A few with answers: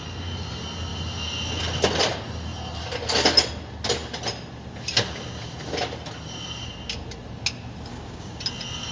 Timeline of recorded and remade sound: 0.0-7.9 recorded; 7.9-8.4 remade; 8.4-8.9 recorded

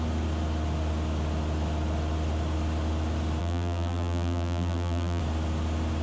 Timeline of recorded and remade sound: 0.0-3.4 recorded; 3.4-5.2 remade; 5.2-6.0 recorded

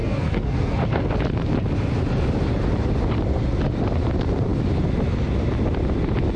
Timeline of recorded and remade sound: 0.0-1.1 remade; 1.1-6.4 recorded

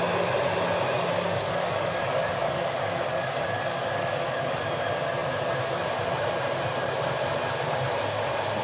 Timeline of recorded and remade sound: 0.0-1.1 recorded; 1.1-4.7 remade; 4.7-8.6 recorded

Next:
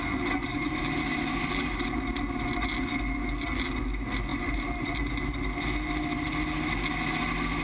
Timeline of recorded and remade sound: 0.0-0.5 recorded; 0.5-2.0 remade; 2.0-4.3 recorded; 4.3-5.1 remade; 5.1-7.6 recorded

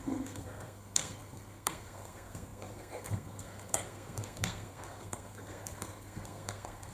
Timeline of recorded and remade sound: 0.0-6.9 remade